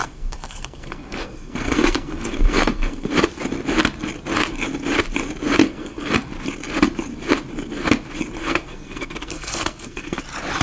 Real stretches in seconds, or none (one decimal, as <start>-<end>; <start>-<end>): 3.1-5.6; 6.1-8.4; 10.2-10.6